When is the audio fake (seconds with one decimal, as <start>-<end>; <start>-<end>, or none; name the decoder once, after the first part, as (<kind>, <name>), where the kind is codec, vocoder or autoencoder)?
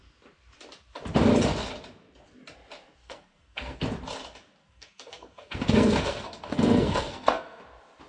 3.0-3.8 (codec, SNAC); 4.6-7.6